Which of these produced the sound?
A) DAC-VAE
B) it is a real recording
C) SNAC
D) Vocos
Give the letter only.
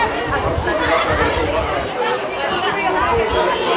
B